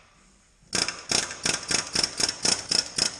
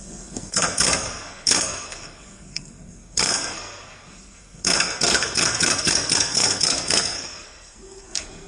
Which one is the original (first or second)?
first